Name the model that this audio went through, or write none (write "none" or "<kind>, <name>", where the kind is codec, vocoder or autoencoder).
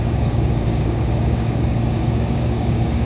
codec, DAC